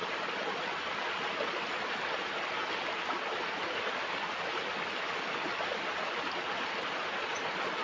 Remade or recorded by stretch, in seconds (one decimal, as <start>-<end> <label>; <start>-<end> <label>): 0.0-7.8 recorded